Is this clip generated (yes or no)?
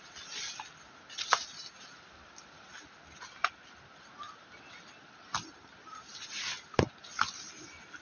no